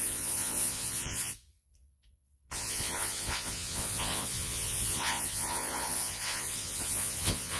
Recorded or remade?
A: remade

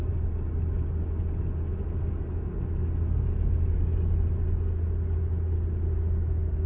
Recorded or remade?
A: recorded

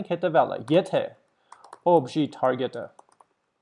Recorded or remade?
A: recorded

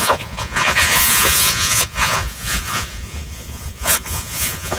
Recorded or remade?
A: remade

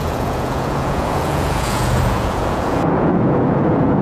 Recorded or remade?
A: remade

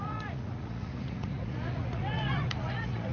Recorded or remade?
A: remade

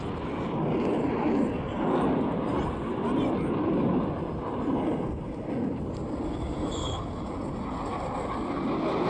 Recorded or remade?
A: recorded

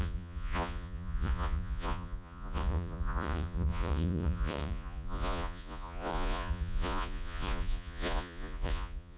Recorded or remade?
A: remade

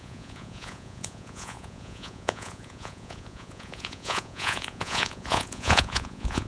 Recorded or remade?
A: remade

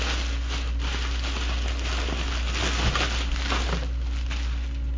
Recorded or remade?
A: recorded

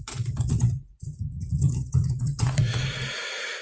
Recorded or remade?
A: remade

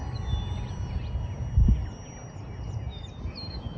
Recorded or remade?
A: recorded